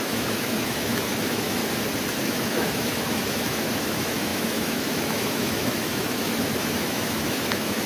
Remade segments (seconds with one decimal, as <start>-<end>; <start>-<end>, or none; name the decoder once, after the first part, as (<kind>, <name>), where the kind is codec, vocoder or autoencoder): 0.0-1.6 (autoencoder, DAC-VAE); 2.2-7.9